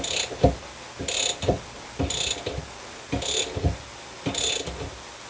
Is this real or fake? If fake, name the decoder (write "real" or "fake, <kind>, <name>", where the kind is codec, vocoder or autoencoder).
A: real